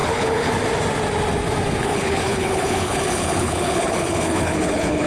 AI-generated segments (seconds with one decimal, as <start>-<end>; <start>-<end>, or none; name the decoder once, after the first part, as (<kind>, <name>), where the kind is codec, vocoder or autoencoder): 0.0-0.5 (codec, HILCodec); 1.8-5.1